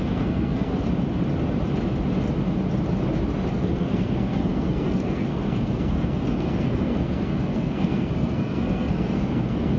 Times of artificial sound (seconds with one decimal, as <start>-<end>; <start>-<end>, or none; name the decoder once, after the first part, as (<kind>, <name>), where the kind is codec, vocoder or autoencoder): 0.0-0.7 (codec, SNAC); 3.5-9.8